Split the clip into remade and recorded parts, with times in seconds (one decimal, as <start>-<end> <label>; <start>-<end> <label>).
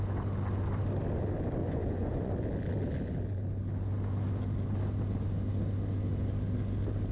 0.0-1.6 recorded; 1.6-2.3 remade; 2.3-7.1 recorded